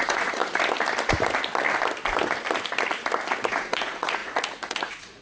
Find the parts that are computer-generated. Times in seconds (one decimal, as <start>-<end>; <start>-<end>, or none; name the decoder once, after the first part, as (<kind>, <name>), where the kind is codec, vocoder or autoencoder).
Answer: 0.0-0.4 (vocoder, Vocos); 3.5-5.2

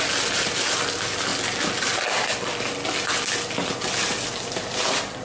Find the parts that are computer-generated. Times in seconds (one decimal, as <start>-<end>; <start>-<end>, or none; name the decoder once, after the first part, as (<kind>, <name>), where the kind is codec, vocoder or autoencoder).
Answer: none

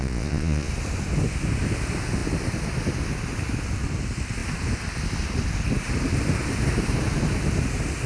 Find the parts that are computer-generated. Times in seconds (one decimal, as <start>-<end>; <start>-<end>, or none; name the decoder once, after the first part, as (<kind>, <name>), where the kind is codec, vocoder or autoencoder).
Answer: 0.0-0.7 (vocoder, Vocos)

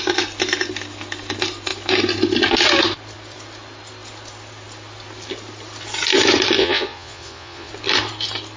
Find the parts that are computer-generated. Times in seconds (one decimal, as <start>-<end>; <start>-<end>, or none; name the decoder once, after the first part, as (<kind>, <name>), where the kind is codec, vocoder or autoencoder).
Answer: 6.6-7.7 (vocoder, Vocos)

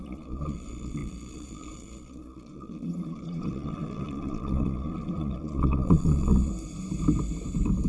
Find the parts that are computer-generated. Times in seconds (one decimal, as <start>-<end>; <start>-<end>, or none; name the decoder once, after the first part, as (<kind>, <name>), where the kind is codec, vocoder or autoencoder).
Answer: 0.0-6.5 (vocoder, Vocos)

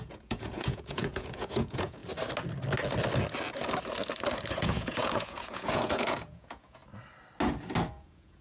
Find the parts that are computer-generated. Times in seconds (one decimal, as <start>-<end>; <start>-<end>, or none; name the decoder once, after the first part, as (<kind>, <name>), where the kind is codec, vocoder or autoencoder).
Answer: 0.0-2.0 (vocoder, Vocos); 4.5-6.8; 7.9-8.4